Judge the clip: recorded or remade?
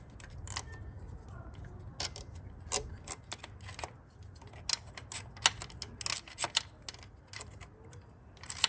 recorded